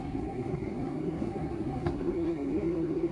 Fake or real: fake